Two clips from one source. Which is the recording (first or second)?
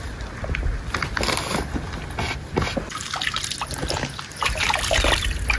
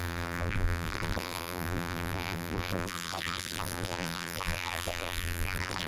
first